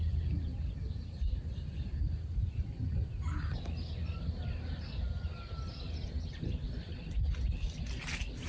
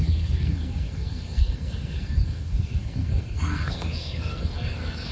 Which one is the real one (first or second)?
first